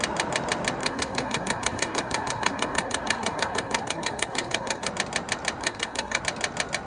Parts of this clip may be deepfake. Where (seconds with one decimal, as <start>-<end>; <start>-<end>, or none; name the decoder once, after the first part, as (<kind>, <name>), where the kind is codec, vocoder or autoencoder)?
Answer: 0.8-4.9 (codec, SNAC); 5.6-6.2